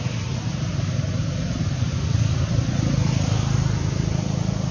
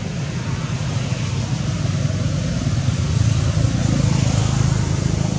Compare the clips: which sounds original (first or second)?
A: second